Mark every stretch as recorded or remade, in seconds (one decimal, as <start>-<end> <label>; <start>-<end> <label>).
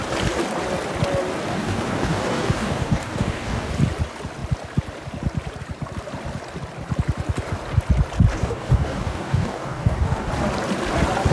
0.0-1.5 recorded; 1.5-3.7 remade; 3.7-8.3 recorded; 8.3-10.3 remade; 10.3-11.3 recorded